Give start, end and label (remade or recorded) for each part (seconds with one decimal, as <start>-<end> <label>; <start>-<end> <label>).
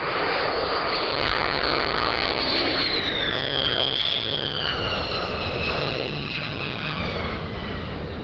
0.0-1.1 recorded; 1.1-2.4 remade; 2.4-3.3 recorded; 3.3-4.7 remade; 4.7-5.8 recorded; 5.8-7.0 remade; 7.0-8.2 recorded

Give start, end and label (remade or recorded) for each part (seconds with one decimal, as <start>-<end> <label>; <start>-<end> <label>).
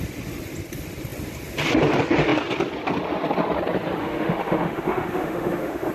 0.0-4.0 recorded; 4.0-5.9 remade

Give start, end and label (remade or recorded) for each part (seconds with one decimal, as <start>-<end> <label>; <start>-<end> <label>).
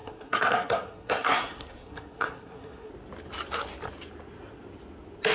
0.0-2.9 remade; 2.9-5.3 recorded